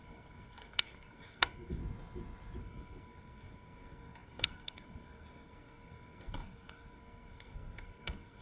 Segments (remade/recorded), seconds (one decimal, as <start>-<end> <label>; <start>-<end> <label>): 0.0-1.8 remade; 1.8-2.6 recorded; 2.6-8.4 remade